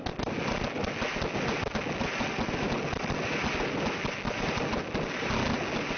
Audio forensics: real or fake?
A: real